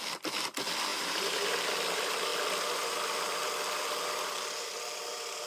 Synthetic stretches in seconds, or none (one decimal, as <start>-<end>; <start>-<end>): 0.9-1.7